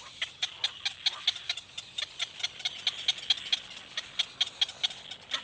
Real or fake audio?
real